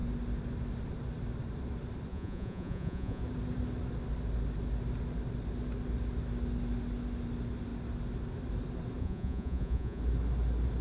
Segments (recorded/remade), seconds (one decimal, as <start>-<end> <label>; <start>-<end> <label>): 0.0-2.1 recorded; 2.1-3.2 remade; 3.2-9.0 recorded; 9.0-10.0 remade; 10.0-10.8 recorded